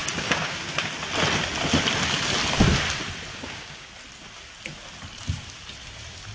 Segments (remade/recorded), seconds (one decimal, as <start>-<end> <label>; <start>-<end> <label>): 0.0-0.6 remade; 0.6-3.3 recorded; 3.3-3.9 remade; 3.9-6.3 recorded